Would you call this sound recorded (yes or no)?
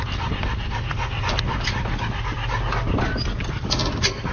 yes